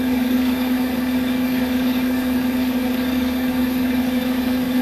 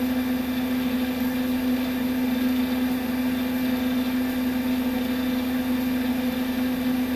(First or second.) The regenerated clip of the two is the first